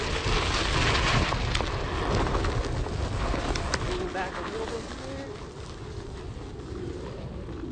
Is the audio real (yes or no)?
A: yes